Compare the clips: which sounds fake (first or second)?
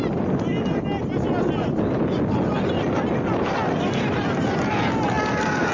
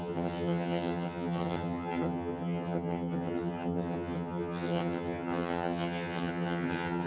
second